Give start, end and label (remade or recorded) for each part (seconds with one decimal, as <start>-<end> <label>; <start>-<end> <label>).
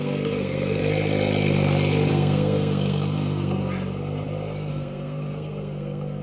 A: 0.0-0.8 remade; 0.8-2.1 recorded; 2.1-3.6 remade; 3.6-4.7 recorded; 4.7-6.2 remade